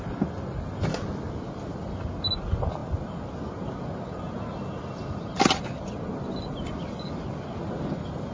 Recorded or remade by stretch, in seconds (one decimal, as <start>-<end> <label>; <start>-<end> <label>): 0.0-8.3 recorded